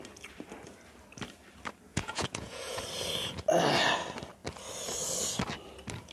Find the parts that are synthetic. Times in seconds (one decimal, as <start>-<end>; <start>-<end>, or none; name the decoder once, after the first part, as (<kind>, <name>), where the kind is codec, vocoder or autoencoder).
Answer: 1.9-2.8 (vocoder, Vocos)